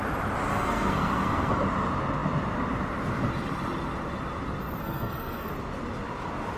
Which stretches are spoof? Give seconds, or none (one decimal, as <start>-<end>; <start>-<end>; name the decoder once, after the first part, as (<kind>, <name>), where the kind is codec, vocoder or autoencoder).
0.5-1.5 (codec, SNAC); 4.8-5.5